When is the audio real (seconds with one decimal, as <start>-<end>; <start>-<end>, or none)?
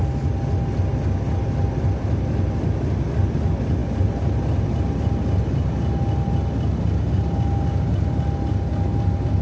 0.0-9.4